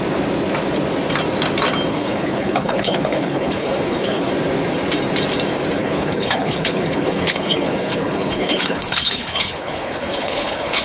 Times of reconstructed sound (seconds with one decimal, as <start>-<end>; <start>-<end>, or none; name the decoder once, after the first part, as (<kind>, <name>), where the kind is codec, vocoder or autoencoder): 1.9-4.3 (codec, HILCodec); 5.8-10.8